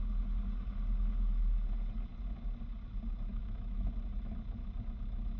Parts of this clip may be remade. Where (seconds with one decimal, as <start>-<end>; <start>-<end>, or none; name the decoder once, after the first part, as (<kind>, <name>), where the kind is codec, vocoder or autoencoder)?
3.3-3.9 (autoencoder, DAC-VAE)